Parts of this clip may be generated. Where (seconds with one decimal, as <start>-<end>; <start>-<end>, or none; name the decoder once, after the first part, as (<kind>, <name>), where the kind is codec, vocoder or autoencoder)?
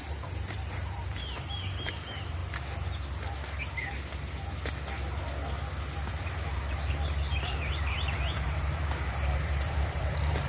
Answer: 0.0-2.4 (vocoder, BigVGAN v2); 6.1-10.5